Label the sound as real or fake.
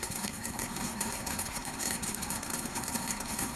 fake